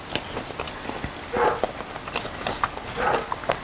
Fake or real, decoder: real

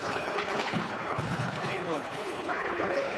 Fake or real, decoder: fake, codec, HILCodec